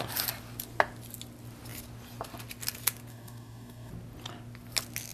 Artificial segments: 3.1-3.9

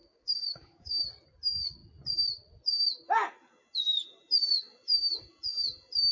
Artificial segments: 0.0-1.0

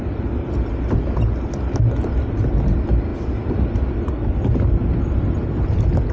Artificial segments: none

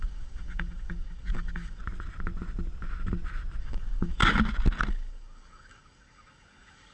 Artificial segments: 0.0-1.8; 3.6-4.2; 4.9-6.9